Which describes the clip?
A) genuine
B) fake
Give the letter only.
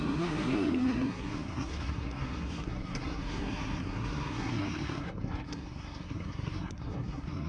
B